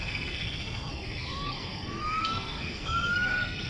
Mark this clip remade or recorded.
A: remade